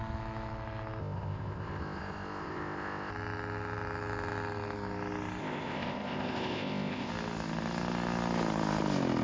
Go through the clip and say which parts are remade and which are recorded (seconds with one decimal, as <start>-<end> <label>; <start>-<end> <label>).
0.0-1.0 recorded; 1.0-3.1 remade; 3.1-5.4 recorded; 5.4-7.1 remade; 7.1-9.2 recorded